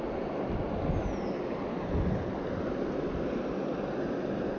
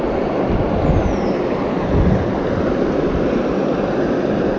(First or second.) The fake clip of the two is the second